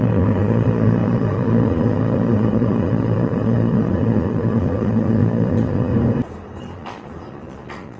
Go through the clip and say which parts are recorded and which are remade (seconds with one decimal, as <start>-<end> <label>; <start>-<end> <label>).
0.0-5.9 remade; 5.9-6.6 recorded; 6.6-8.0 remade